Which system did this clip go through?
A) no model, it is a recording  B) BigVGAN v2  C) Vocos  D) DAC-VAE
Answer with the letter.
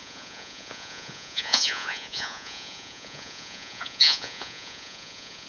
C